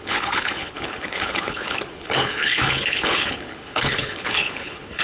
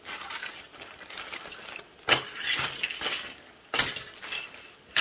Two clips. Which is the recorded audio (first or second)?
second